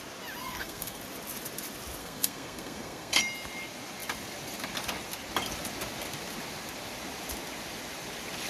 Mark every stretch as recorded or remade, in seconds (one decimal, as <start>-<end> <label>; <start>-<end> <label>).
0.0-0.4 recorded; 0.4-1.0 remade; 1.0-2.0 recorded; 2.0-3.2 remade; 3.2-8.5 recorded